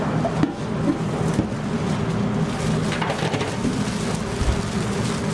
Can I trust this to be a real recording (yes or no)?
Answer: yes